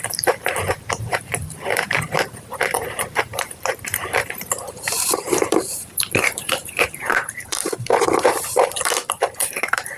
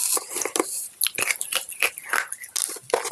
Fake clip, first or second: first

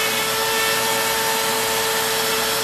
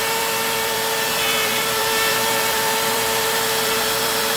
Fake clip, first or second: second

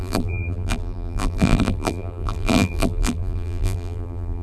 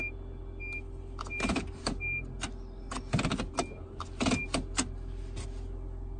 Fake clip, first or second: first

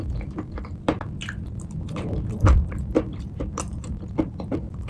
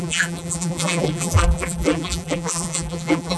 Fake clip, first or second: second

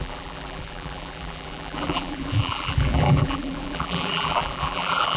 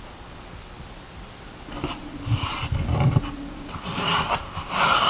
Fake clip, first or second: first